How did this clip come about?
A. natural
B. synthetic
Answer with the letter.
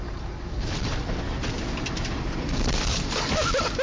B